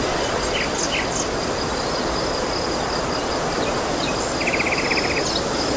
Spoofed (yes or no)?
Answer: no